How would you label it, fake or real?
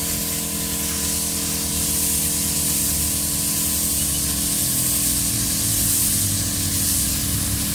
real